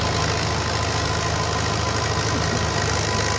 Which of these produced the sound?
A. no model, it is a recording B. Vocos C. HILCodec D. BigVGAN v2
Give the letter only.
A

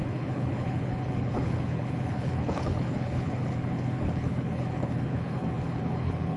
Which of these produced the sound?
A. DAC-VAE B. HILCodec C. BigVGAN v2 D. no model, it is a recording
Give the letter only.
B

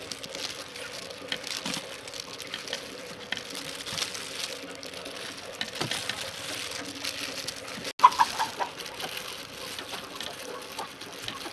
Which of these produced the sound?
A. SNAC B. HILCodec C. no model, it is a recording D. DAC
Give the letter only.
C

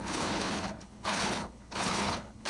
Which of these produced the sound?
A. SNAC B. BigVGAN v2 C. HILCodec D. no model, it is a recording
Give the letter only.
C